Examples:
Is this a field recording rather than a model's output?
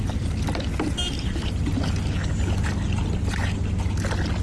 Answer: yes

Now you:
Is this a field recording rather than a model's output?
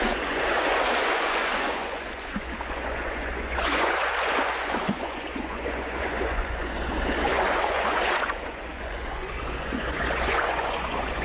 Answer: no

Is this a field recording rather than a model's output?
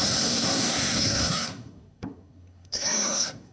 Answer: no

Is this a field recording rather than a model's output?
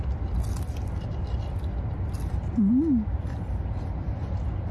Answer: yes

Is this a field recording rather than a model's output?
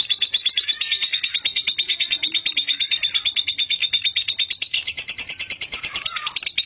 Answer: yes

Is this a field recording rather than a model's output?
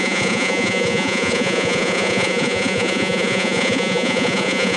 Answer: no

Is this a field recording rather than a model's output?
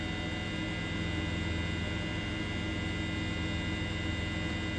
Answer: yes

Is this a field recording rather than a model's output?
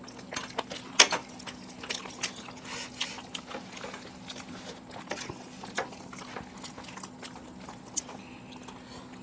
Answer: yes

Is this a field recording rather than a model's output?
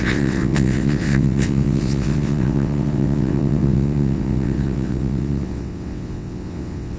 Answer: no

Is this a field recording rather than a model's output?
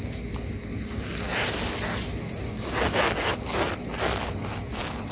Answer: yes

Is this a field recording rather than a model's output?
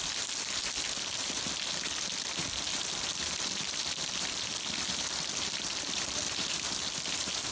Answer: no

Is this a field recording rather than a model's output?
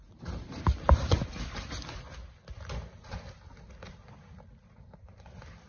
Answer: yes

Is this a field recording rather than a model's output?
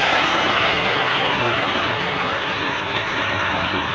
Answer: no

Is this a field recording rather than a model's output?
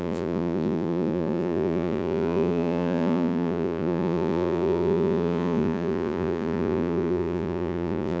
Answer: no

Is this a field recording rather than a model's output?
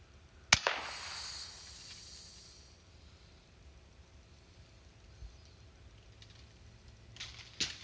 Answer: yes